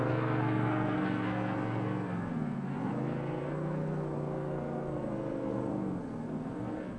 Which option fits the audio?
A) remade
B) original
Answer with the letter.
A